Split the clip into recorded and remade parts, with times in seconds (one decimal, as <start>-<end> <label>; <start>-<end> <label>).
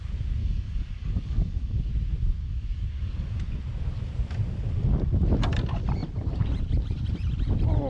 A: 0.0-0.4 recorded; 0.4-1.9 remade; 1.9-2.4 recorded; 2.4-3.4 remade; 3.4-7.9 recorded